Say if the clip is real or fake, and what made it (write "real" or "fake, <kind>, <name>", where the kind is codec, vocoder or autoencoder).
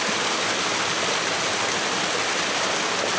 real